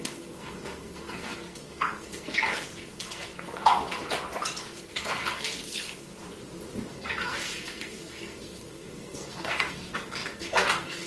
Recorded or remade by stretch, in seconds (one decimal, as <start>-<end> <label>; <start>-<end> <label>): 0.0-4.0 remade; 4.0-4.6 recorded; 4.6-6.1 remade; 6.1-6.9 recorded; 6.9-11.1 remade